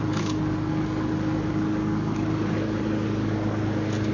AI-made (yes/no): yes